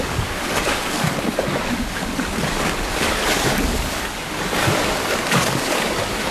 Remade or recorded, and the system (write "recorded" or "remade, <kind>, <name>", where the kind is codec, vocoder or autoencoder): remade, codec, DAC